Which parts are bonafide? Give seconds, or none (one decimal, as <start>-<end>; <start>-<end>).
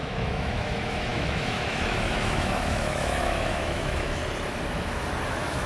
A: 4.2-5.3